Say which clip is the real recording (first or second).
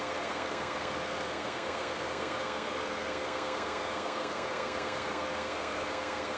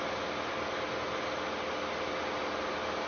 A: second